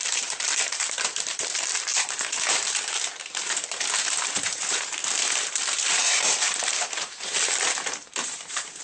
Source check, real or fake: fake